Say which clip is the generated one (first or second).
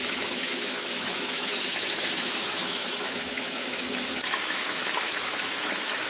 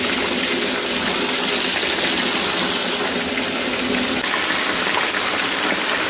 first